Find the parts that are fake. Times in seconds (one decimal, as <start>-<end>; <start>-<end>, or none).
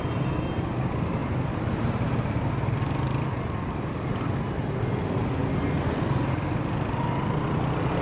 none